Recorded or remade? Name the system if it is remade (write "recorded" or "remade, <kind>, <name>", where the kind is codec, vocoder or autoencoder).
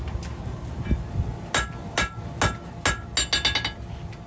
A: recorded